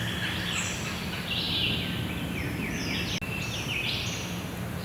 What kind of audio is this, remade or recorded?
recorded